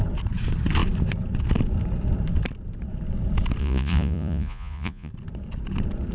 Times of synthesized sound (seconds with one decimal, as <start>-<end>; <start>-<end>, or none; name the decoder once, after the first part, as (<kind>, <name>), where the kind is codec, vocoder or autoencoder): 3.6-5.1 (vocoder, Vocos)